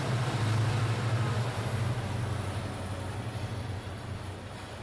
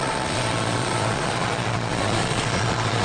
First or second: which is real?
first